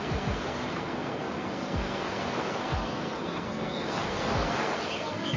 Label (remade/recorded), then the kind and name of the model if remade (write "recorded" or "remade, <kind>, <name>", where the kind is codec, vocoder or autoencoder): remade, codec, SNAC